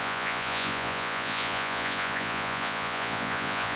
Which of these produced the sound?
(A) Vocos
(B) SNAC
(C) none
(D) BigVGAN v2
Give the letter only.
A